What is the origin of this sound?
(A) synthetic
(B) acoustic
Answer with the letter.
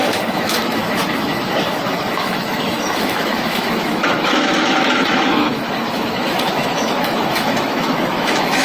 A